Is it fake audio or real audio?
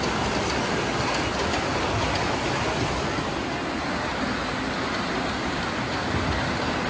real